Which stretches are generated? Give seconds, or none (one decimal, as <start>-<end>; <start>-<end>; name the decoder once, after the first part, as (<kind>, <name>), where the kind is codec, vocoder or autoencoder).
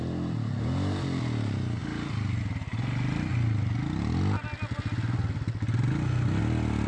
none